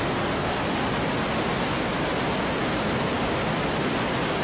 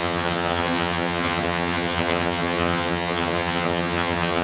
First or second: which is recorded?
first